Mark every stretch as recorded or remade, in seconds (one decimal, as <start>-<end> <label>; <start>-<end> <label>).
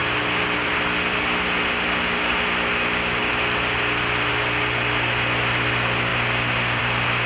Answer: 0.0-7.3 recorded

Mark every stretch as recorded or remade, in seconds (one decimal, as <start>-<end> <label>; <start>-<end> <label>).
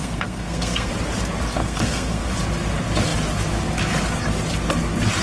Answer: 0.0-0.9 remade; 0.9-1.6 recorded; 1.6-2.3 remade; 2.3-5.2 recorded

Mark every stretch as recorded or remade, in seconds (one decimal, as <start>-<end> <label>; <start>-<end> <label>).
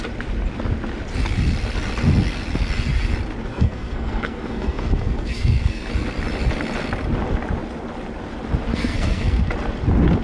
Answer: 0.0-3.5 recorded; 3.5-5.9 remade; 5.9-8.7 recorded; 8.7-9.4 remade; 9.4-10.2 recorded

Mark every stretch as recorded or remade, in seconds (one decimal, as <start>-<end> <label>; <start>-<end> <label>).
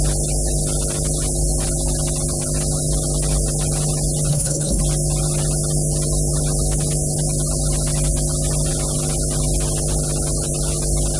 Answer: 0.0-4.3 recorded; 4.3-4.8 remade; 4.8-11.2 recorded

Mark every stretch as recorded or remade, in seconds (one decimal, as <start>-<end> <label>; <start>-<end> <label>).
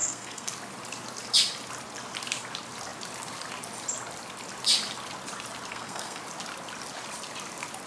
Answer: 0.0-0.5 remade; 0.5-5.7 recorded; 5.7-6.2 remade; 6.2-7.9 recorded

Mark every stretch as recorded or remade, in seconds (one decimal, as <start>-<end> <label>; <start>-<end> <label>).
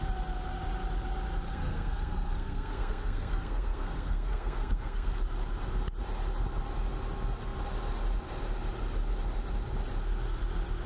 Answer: 0.0-1.5 recorded; 1.5-5.2 remade; 5.2-10.9 recorded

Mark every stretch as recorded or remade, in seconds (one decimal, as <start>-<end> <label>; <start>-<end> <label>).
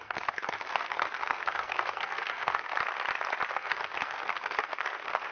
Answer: 0.0-2.7 remade; 2.7-3.5 recorded; 3.5-5.3 remade